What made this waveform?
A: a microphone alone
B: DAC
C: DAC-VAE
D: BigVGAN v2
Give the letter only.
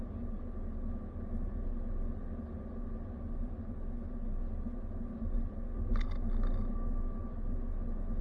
A